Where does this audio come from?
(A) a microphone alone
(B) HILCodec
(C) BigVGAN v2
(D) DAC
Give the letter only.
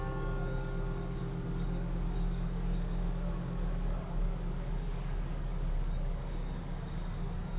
D